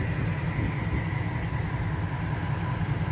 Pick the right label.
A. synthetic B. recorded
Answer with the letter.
B